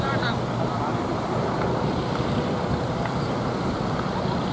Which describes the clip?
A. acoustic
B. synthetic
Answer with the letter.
B